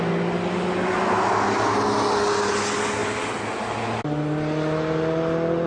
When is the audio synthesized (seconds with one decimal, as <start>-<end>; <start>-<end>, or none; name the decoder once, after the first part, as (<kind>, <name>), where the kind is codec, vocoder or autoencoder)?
none